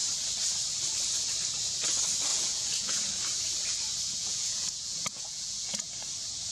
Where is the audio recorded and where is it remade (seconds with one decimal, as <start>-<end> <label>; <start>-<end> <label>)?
0.0-2.3 recorded; 2.3-3.0 remade; 3.0-4.2 recorded; 4.2-5.9 remade; 5.9-6.5 recorded

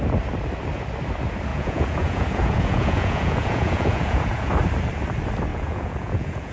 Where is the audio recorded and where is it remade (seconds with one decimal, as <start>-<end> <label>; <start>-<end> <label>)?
0.0-1.5 recorded; 1.5-4.5 remade; 4.5-5.5 recorded; 5.5-6.5 remade